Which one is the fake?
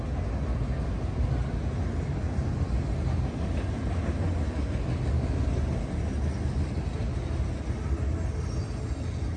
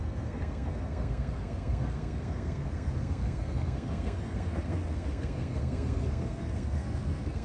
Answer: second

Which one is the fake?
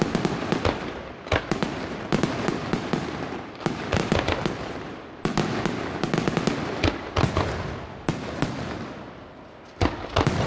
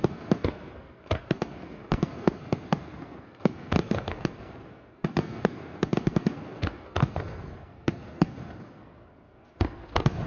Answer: second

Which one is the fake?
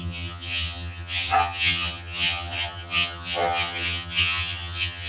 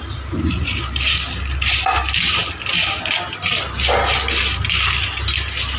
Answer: first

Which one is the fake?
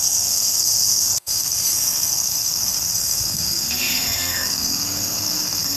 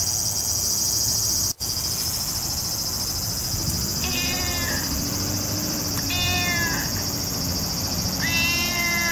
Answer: first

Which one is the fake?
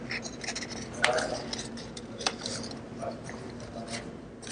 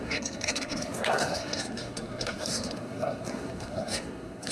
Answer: second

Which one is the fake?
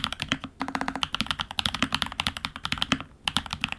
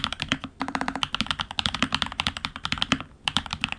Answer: second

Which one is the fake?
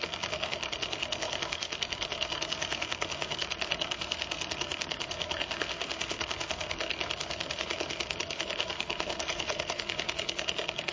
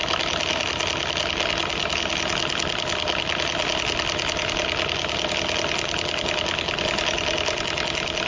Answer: first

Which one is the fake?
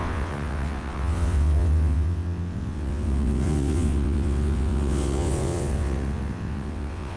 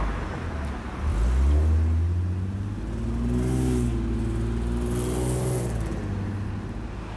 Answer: first